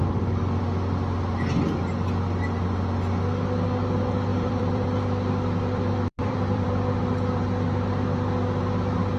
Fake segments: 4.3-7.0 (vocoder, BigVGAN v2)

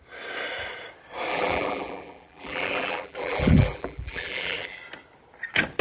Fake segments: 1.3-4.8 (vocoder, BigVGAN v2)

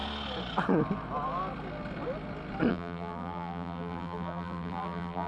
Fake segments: 2.7-5.3 (vocoder, BigVGAN v2)